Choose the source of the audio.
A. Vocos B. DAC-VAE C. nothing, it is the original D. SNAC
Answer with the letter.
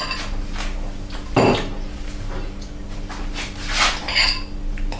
C